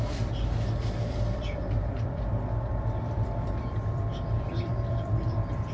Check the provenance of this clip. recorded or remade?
remade